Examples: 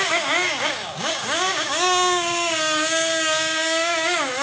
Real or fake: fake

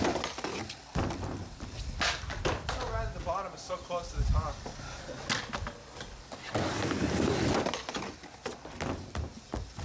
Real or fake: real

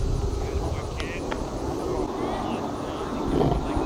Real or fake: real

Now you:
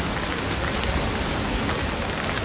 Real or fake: real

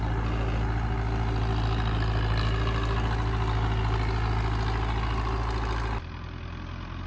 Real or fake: real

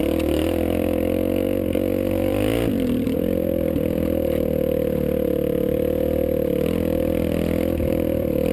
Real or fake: fake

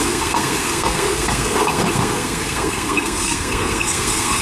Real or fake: fake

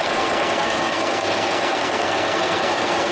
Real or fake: fake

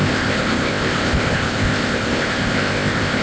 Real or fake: fake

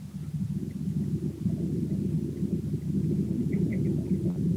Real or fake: real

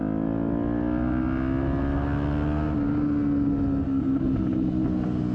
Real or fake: real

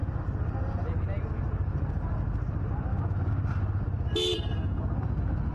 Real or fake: real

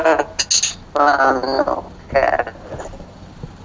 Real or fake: real